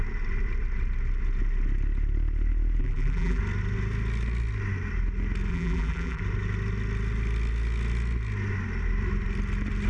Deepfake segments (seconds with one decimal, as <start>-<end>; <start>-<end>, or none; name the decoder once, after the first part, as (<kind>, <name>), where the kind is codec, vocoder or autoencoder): 2.8-3.4 (vocoder, BigVGAN v2); 5.5-6.2